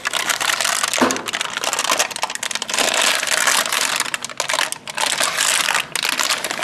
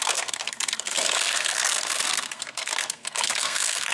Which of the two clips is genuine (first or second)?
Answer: first